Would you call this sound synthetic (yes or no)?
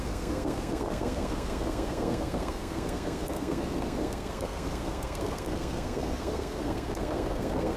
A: yes